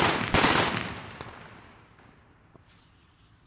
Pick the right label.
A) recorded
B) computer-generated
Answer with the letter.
A